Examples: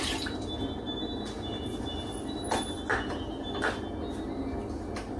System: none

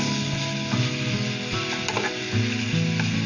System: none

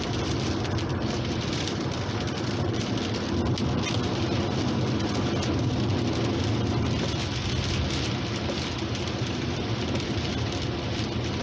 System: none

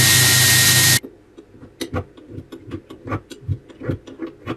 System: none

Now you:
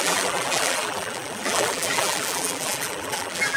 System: vocoder, BigVGAN v2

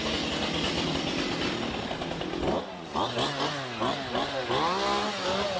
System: none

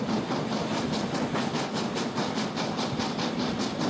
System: none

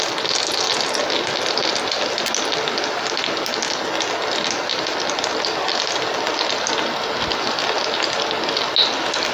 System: none